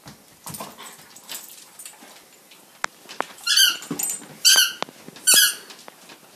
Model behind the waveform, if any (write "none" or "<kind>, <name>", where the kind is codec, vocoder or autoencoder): none